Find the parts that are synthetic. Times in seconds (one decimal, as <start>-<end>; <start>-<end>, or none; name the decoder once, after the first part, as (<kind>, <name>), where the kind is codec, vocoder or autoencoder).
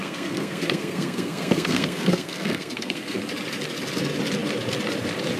0.0-3.2 (codec, SNAC)